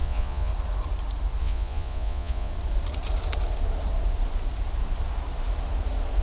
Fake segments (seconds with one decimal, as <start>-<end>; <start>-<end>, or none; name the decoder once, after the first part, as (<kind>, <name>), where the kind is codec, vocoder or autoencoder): 0.0-0.5 (vocoder, Vocos); 1.4-2.5